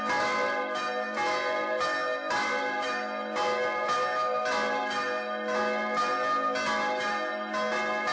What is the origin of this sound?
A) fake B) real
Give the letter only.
B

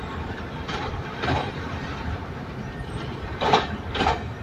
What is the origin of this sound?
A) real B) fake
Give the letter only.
B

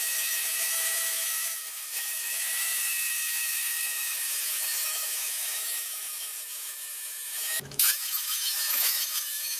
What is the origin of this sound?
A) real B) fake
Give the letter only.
B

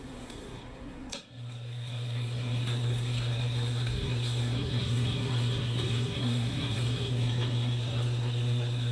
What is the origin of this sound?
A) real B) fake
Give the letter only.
B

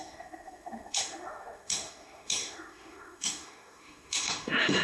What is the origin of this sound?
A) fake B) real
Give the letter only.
A